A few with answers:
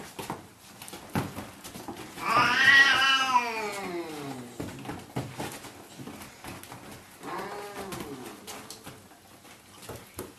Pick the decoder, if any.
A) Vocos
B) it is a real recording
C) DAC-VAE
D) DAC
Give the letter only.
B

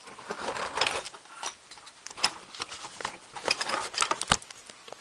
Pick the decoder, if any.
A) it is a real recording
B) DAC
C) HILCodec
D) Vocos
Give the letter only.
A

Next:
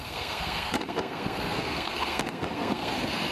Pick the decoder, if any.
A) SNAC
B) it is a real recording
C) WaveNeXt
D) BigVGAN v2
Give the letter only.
A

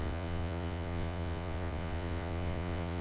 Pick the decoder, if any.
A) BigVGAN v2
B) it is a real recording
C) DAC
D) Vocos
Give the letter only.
D